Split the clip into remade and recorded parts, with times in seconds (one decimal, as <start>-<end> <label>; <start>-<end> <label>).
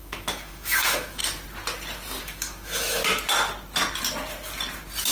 0.0-1.2 remade; 1.2-2.2 recorded; 2.2-3.0 remade; 3.0-5.1 recorded